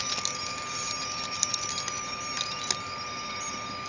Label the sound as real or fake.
real